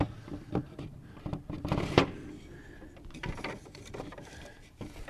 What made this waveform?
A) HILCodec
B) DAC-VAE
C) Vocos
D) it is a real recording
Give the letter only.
D